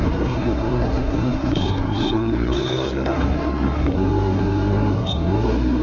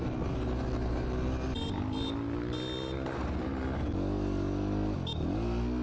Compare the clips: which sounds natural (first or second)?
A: second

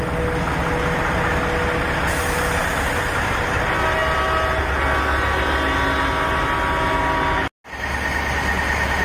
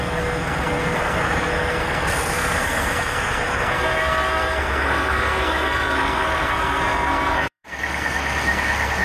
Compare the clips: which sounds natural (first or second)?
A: first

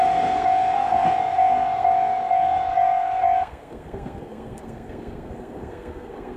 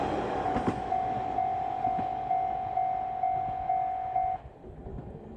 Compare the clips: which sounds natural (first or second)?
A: second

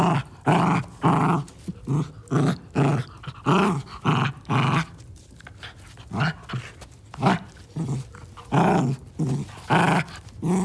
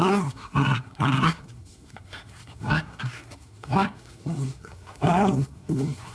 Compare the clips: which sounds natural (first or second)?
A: first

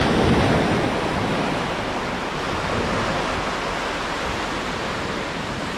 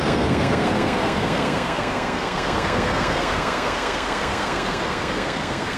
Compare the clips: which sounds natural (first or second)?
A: first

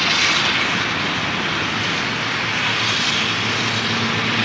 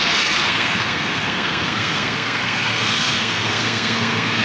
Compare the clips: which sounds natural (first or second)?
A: first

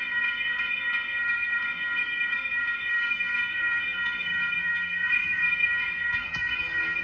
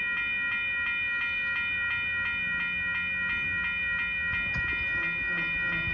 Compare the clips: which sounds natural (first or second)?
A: second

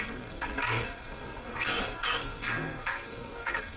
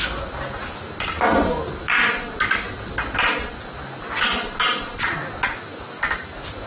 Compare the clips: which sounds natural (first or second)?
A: second